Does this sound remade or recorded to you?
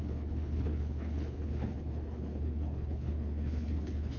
remade